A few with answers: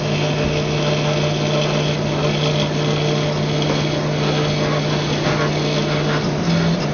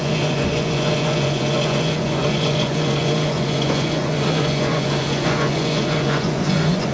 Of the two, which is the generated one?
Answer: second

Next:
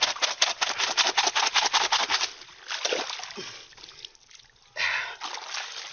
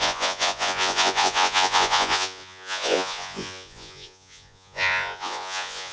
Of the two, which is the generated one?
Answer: second